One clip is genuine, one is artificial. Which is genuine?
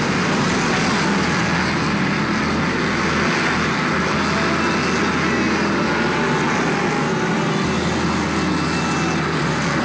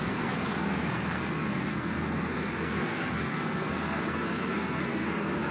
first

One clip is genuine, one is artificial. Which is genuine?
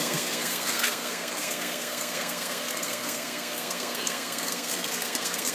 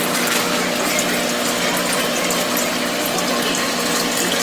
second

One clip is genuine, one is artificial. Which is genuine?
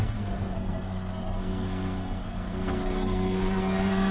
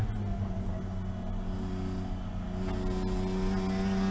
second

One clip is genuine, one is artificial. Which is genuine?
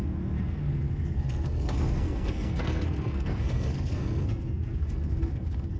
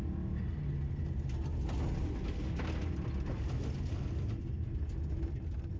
second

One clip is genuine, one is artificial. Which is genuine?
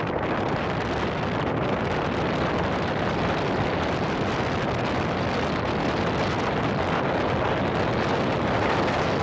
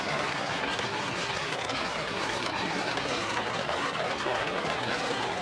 first